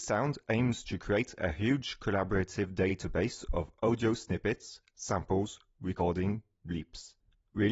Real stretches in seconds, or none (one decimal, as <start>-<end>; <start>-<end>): 0.0-2.9; 6.0-6.9